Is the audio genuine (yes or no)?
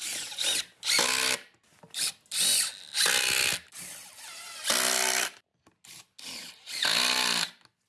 yes